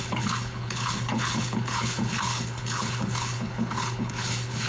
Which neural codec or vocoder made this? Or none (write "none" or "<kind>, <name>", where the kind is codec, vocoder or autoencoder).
codec, HILCodec